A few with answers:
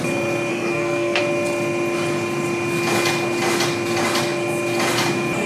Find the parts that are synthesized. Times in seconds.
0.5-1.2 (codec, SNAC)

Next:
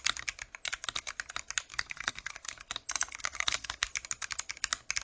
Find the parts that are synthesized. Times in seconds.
1.7-2.6 (codec, SNAC); 3.2-3.9

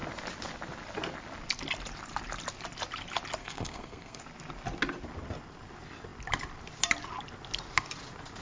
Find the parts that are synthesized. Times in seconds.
3.4-4.2 (codec, SNAC)

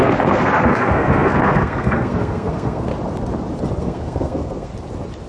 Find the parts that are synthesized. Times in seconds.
0.0-2.9 (codec, SNAC); 3.8-4.7